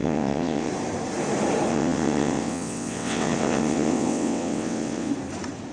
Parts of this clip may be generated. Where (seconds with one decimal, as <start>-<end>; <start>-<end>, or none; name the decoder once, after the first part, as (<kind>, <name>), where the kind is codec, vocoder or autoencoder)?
0.0-0.7 (vocoder, WaveNeXt); 1.7-5.1